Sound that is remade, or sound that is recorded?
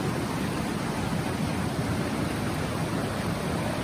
recorded